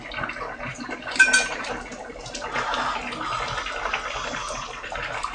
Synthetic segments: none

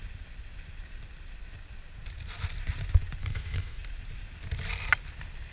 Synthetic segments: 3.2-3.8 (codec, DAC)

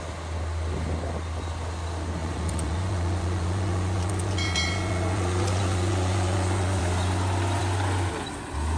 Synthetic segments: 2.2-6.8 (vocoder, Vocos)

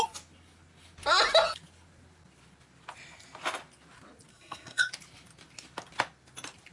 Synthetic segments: 4.3-4.9 (codec, SNAC)

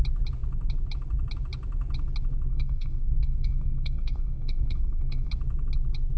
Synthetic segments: 2.5-5.3 (codec, SNAC)